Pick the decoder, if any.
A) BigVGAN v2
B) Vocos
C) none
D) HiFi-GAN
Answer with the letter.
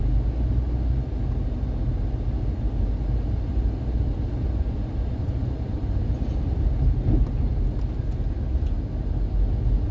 C